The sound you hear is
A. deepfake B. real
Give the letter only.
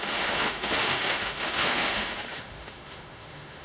A